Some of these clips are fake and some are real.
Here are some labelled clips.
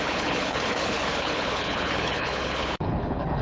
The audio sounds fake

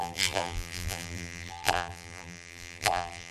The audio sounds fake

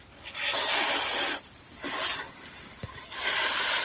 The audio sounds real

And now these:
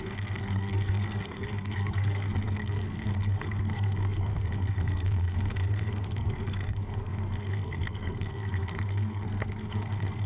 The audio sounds fake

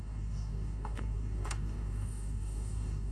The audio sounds fake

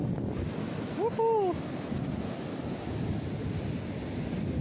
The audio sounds real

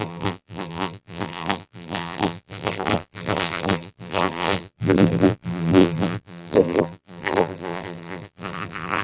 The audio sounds fake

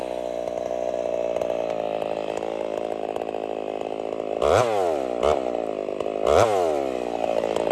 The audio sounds real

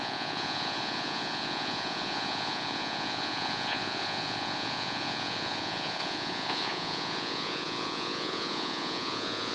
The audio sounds fake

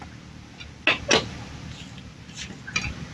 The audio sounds real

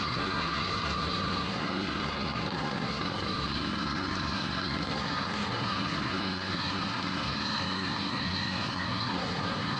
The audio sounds fake